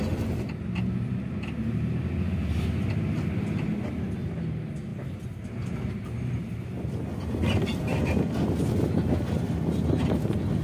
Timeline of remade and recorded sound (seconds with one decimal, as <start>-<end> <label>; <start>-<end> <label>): 0.0-10.6 recorded